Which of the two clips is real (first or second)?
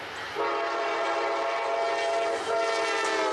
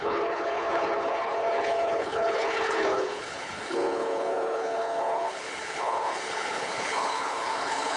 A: first